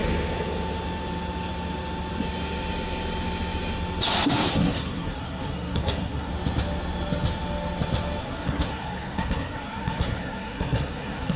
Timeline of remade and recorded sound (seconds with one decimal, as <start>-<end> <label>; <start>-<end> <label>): 0.0-4.5 recorded; 4.5-6.3 remade; 6.3-8.2 recorded; 8.2-11.4 remade